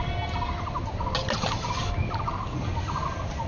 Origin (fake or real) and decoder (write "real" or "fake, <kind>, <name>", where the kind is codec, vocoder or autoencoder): real